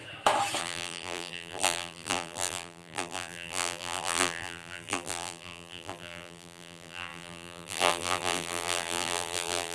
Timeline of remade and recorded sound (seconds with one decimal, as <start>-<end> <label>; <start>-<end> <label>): 0.0-0.6 recorded; 0.6-9.7 remade